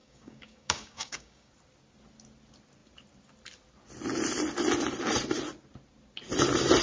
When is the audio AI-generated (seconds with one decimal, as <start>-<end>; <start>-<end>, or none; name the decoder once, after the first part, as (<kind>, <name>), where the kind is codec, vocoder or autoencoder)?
0.0-1.5 (codec, DAC)